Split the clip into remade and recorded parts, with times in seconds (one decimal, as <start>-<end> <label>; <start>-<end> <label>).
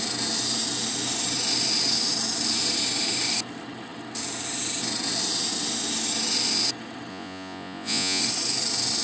0.0-7.1 recorded; 7.1-8.2 remade; 8.2-9.0 recorded